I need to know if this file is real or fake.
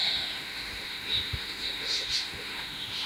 fake